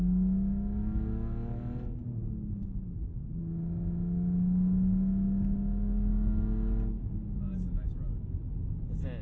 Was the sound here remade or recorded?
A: recorded